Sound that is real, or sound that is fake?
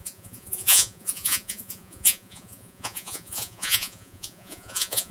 fake